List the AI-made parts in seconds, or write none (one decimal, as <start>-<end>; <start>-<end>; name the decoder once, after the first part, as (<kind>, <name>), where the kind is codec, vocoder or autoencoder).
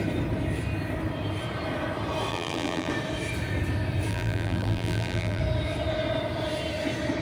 2.3-2.9 (vocoder, BigVGAN v2); 4.1-5.4